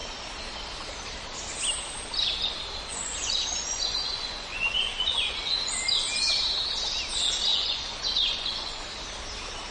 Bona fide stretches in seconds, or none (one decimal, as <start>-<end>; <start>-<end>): 0.0-2.9; 5.7-7.5; 8.9-9.7